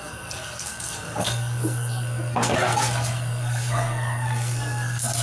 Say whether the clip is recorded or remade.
remade